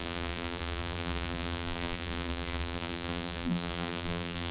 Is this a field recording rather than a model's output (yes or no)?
no